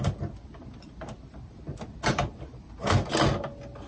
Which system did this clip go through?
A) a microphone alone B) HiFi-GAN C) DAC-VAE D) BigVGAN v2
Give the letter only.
A